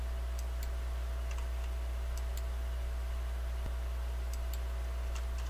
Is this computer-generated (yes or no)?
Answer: no